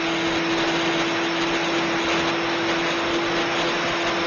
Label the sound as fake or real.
real